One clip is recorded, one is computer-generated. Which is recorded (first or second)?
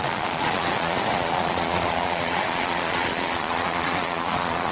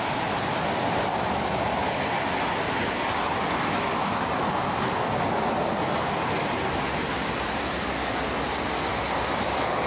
second